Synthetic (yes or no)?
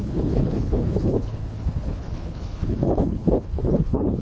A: yes